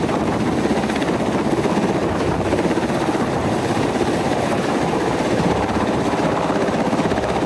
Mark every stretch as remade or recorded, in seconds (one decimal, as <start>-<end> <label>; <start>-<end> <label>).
0.0-2.0 recorded; 2.0-6.5 remade; 6.5-7.5 recorded